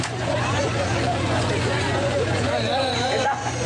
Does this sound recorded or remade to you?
remade